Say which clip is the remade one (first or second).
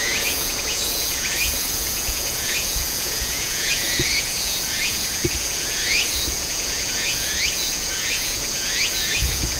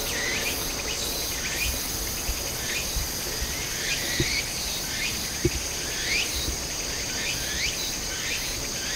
first